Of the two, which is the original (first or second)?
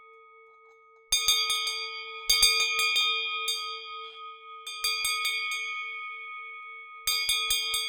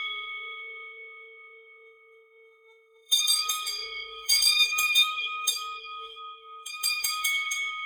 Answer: first